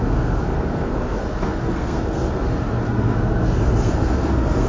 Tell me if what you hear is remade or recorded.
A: remade